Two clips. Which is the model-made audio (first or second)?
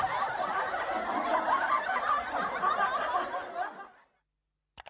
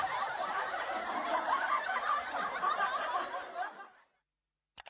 second